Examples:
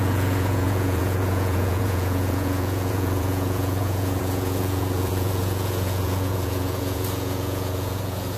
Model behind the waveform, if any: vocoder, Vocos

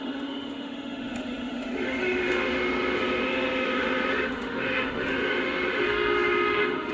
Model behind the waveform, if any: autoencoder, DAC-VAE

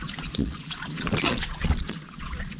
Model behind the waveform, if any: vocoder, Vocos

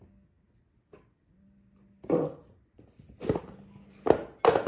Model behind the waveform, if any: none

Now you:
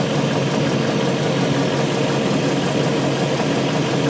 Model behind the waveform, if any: none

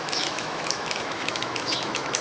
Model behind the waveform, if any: autoencoder, DAC-VAE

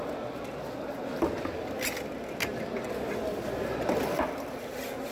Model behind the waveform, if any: none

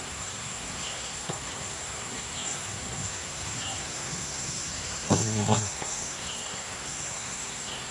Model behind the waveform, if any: codec, SNAC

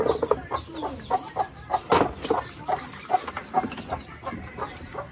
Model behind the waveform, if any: none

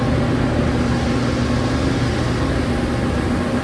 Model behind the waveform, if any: none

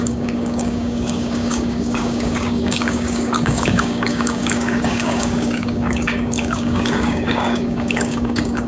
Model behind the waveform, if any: codec, DAC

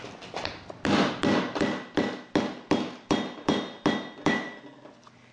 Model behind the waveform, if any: none